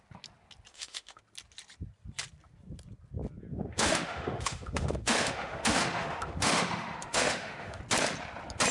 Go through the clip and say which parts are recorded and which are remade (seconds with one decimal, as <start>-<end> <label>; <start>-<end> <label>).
0.0-0.7 recorded; 0.7-1.2 remade; 1.2-3.5 recorded; 3.5-7.8 remade; 7.8-8.7 recorded